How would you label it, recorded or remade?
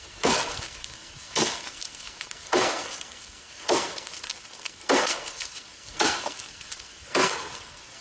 remade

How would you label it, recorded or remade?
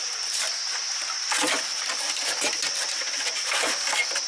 remade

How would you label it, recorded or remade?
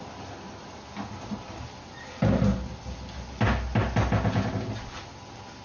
recorded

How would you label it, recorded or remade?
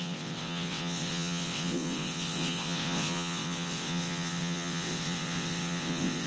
remade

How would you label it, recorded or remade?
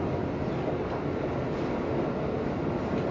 recorded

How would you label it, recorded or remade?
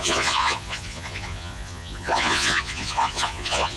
remade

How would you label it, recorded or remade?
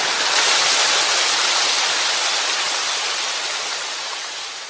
recorded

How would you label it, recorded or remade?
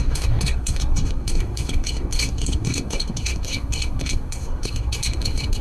remade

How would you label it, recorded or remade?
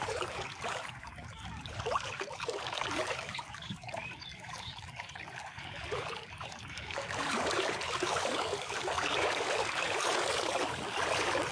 remade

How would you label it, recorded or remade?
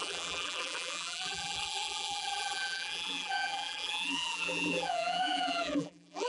remade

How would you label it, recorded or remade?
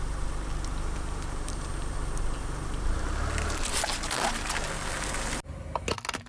recorded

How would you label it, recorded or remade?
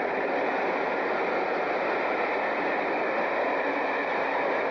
recorded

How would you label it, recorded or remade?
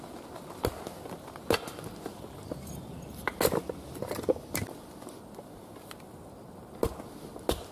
recorded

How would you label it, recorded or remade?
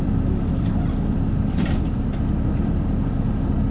remade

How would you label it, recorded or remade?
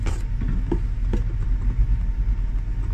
recorded